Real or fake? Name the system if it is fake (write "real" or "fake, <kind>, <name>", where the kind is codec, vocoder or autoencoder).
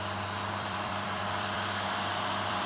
fake, vocoder, BigVGAN v2